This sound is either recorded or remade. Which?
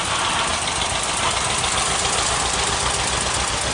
recorded